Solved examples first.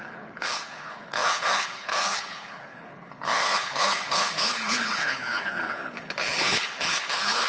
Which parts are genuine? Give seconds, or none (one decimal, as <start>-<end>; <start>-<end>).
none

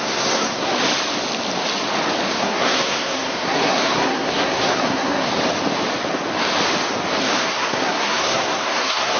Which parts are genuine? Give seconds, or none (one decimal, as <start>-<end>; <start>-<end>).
0.7-2.3; 5.3-7.2

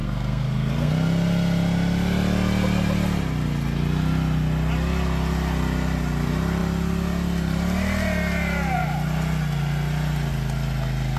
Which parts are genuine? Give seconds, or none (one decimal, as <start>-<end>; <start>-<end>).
0.9-11.2

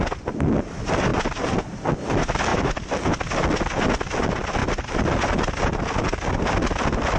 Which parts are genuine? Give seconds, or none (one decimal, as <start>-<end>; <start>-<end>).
0.0-7.2